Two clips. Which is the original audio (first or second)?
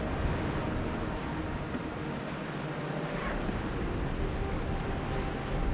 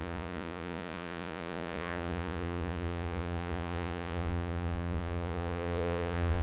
first